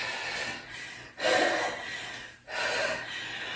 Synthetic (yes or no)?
no